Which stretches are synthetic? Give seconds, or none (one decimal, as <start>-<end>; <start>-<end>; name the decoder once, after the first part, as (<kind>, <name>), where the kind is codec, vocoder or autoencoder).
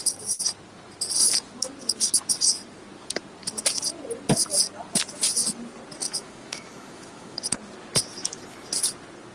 6.0-7.4 (autoencoder, DAC-VAE)